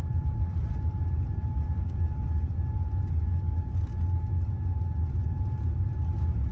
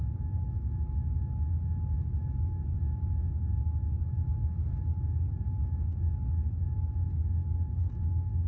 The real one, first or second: second